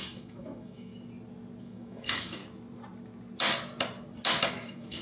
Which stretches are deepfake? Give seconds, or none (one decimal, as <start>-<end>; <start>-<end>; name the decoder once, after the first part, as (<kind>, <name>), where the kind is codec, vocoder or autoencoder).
0.0-0.9 (autoencoder, DAC-VAE); 1.6-2.4; 4.5-5.0